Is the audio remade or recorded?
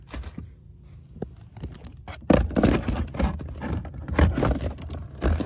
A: recorded